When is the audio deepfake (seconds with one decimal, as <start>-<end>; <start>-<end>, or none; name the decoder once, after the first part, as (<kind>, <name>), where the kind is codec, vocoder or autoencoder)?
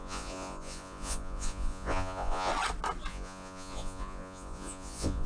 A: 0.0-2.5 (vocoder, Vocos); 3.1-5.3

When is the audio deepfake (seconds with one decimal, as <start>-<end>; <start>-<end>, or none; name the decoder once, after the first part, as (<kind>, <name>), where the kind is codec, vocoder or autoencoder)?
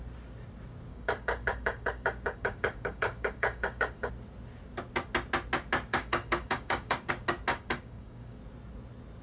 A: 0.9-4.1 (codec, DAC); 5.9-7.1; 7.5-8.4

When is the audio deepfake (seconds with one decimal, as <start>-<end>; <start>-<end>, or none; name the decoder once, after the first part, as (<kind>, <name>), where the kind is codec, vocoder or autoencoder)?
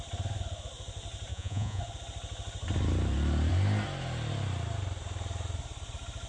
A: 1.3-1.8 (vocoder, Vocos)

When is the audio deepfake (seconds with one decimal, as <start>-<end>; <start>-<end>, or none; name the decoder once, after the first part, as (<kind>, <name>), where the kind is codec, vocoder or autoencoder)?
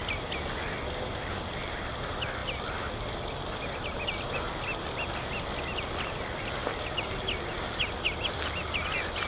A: none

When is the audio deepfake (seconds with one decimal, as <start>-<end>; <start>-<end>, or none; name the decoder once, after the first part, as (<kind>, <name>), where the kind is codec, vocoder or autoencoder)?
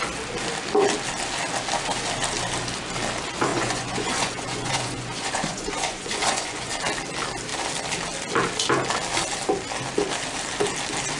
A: 3.5-6.7 (vocoder, Vocos)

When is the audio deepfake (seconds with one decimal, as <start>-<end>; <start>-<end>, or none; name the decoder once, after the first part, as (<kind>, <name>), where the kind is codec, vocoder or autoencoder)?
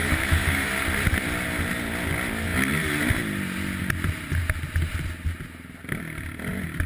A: 0.0-0.7 (autoencoder, DAC-VAE)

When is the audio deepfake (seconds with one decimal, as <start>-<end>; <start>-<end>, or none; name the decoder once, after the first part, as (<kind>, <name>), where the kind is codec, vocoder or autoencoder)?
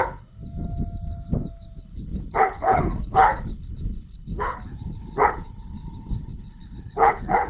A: 0.0-0.4 (codec, HILCodec); 1.8-7.5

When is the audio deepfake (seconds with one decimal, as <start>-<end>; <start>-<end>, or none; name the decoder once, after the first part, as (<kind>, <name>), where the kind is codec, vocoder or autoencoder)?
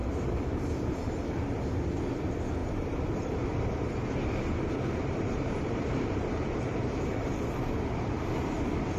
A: 0.0-1.6 (vocoder, BigVGAN v2); 2.6-7.5